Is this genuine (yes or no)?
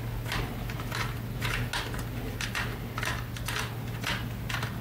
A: yes